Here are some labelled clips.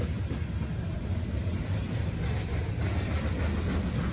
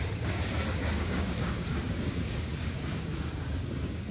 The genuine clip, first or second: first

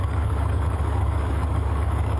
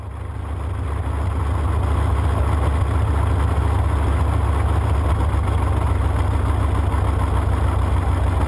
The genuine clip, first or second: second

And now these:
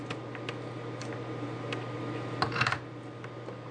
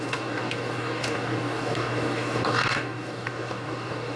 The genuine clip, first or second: first